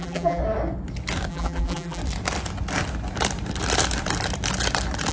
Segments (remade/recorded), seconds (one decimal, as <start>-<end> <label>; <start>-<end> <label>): 0.0-0.4 remade; 0.4-1.3 recorded; 1.3-2.0 remade; 2.0-5.1 recorded